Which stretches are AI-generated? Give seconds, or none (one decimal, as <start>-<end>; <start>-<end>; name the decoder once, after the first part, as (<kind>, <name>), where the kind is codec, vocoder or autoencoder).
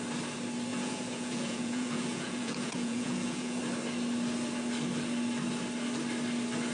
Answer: 0.7-3.6 (vocoder, Vocos)